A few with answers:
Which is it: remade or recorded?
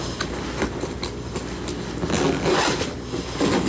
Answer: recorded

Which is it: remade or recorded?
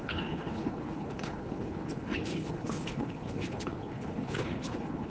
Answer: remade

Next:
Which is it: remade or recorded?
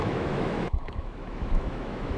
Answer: remade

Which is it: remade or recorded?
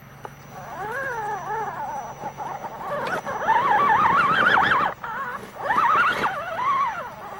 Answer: recorded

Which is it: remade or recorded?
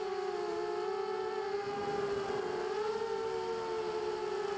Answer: recorded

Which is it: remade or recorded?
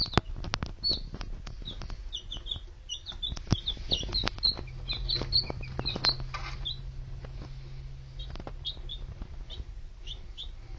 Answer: recorded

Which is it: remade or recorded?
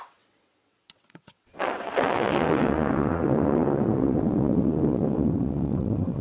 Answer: remade